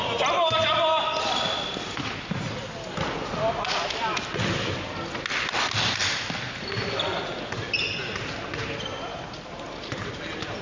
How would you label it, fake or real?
real